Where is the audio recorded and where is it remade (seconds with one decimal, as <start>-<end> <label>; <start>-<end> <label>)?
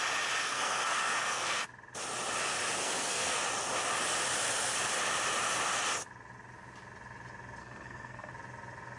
0.0-0.4 recorded; 0.4-1.6 remade; 1.6-2.8 recorded; 2.8-3.4 remade; 3.4-7.6 recorded; 7.6-8.3 remade; 8.3-9.0 recorded